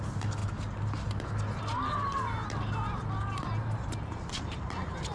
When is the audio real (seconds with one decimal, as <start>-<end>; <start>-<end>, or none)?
0.0-5.1